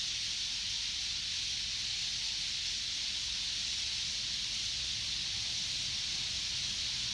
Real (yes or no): yes